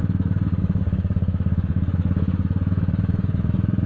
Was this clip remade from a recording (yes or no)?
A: yes